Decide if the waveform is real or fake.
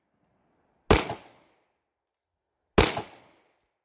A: real